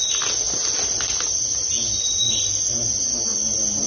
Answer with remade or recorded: recorded